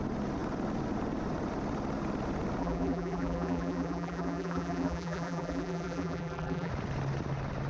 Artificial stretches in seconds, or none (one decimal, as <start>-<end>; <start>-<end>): 2.6-6.7